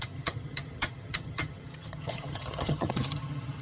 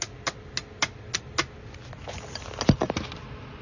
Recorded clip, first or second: second